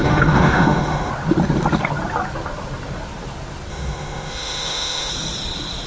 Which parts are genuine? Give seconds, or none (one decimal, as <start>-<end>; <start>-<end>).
1.1-3.7; 5.1-5.9